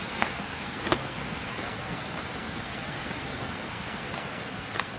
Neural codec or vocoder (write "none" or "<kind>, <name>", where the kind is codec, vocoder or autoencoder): codec, SNAC